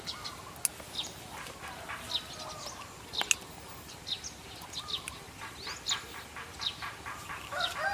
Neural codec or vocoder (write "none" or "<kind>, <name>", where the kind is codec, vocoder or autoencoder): none